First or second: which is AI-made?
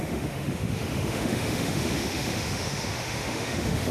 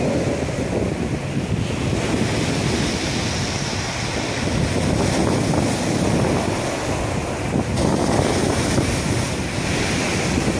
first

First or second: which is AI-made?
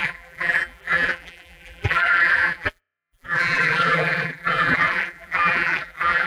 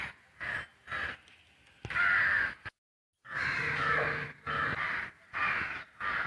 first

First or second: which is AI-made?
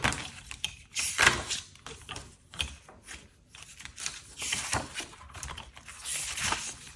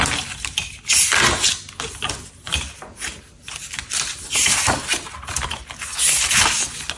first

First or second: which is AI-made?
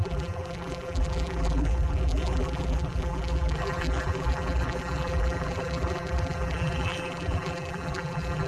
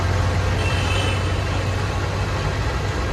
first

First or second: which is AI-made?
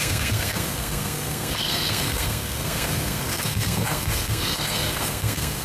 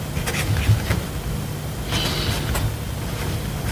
first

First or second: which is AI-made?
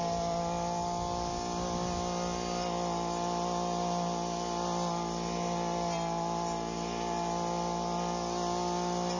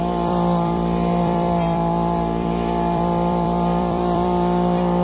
second